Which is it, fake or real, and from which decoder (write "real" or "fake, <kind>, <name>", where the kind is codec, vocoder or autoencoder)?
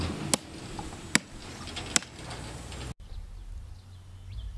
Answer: real